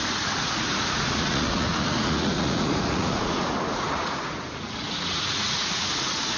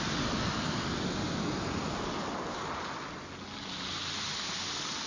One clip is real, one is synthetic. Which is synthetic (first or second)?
first